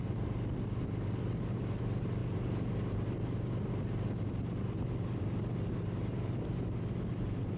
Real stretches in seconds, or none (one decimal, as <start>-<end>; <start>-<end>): 0.0-7.6